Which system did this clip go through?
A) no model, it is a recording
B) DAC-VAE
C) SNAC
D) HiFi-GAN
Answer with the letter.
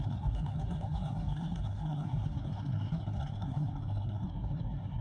C